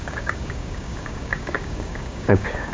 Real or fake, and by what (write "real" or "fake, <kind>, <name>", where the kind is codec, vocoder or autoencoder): fake, codec, DAC